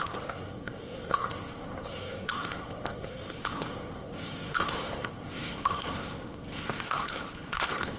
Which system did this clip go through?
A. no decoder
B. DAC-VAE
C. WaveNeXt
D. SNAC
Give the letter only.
D